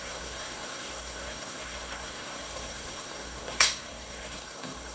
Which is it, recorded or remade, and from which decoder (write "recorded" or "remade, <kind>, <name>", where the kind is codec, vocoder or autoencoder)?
remade, codec, SNAC